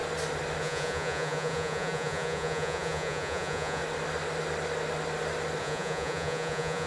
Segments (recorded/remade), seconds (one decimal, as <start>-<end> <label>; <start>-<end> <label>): 0.0-0.6 recorded; 0.6-3.8 remade; 3.8-5.6 recorded; 5.6-6.9 remade